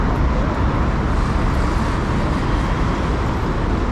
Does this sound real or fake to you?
real